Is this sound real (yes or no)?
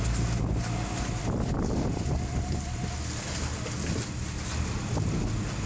yes